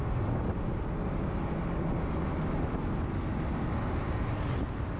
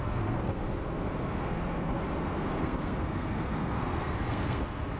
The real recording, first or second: first